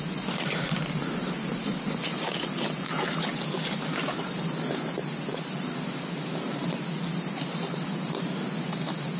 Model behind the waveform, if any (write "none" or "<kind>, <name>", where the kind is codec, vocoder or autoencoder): none